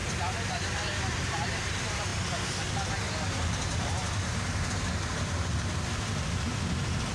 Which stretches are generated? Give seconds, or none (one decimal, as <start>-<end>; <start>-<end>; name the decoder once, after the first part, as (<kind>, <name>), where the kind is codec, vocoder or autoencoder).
none